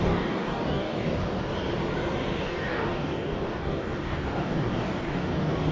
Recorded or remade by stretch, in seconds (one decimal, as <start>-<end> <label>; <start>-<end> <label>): 0.0-1.5 remade; 1.5-2.4 recorded; 2.4-5.7 remade